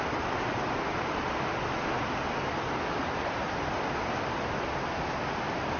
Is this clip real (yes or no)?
yes